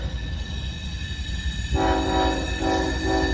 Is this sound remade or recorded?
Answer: recorded